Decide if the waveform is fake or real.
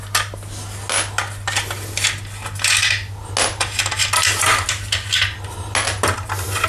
real